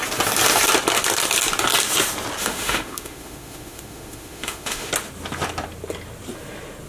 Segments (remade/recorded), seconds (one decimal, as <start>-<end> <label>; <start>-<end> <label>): 0.0-2.4 recorded; 2.4-4.9 remade; 4.9-6.9 recorded